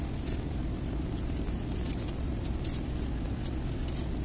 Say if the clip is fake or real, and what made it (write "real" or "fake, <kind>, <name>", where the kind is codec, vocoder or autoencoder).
real